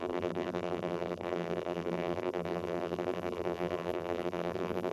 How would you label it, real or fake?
fake